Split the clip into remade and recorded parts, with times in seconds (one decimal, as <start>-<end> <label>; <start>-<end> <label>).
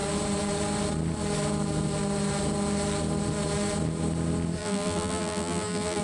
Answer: 0.0-4.6 recorded; 4.6-6.0 remade